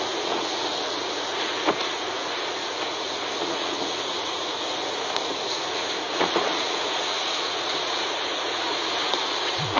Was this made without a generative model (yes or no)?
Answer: no